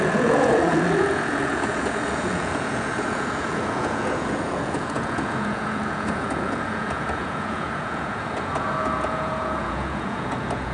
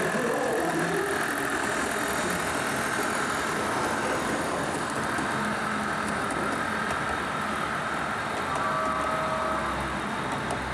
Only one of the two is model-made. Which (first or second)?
first